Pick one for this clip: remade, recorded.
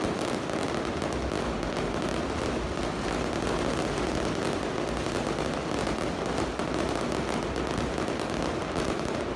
recorded